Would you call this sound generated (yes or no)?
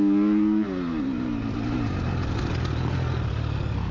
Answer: no